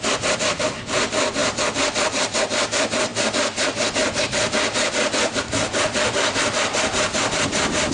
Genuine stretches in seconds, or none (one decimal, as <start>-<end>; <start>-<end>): none